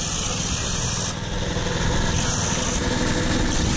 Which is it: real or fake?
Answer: real